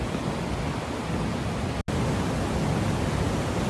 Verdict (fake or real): real